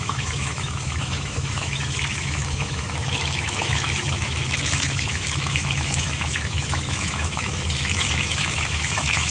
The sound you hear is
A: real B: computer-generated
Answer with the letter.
B